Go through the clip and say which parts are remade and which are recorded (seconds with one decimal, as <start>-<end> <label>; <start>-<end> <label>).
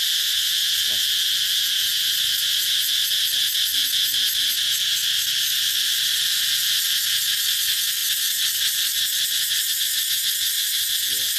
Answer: 0.0-11.4 recorded